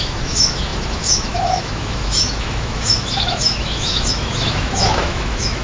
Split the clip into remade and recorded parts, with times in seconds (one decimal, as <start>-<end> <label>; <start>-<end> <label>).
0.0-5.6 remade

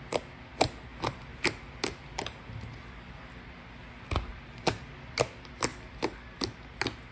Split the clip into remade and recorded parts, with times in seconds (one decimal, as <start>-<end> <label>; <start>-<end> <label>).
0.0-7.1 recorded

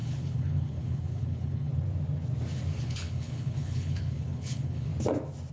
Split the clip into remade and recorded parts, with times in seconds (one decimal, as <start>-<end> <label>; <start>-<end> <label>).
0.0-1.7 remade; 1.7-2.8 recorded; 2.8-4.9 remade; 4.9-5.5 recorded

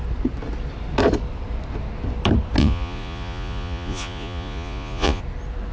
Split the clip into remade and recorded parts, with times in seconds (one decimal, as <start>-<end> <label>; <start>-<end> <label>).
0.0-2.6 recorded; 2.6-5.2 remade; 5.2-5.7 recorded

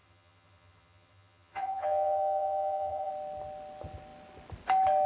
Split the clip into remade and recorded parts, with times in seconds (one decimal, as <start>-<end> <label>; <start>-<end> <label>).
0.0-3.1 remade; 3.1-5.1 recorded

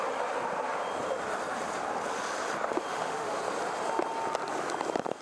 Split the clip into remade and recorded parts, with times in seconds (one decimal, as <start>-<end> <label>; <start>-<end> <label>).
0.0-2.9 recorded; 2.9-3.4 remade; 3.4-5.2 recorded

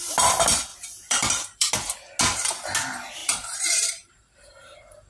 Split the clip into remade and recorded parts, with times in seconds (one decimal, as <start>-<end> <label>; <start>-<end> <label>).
0.0-0.7 recorded; 0.7-1.7 remade; 1.7-3.2 recorded; 3.2-5.1 remade

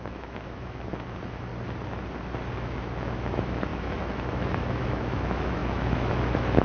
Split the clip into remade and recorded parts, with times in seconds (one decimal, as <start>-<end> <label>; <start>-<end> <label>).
0.0-1.5 remade; 1.5-2.5 recorded; 2.5-6.6 remade